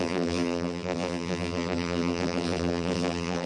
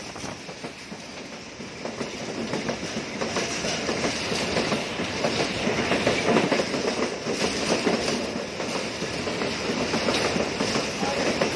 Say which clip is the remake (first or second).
first